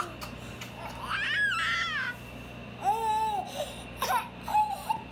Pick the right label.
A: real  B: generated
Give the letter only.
A